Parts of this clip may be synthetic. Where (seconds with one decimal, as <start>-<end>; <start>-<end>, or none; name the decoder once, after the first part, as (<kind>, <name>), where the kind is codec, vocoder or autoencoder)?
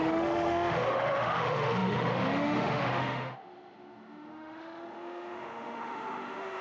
0.0-6.6 (autoencoder, DAC-VAE)